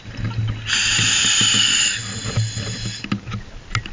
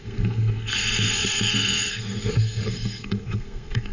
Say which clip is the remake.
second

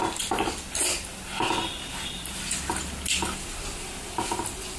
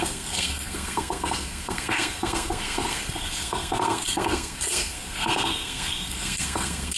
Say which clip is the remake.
second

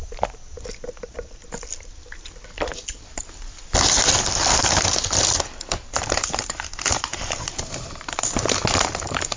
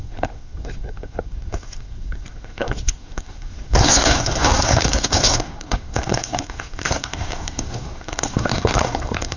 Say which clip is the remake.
second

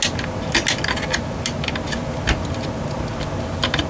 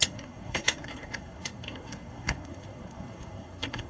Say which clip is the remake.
second